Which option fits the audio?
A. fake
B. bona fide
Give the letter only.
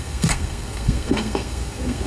A